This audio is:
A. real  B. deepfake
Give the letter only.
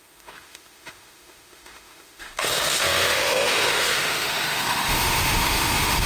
B